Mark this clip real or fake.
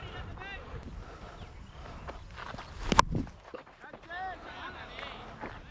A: real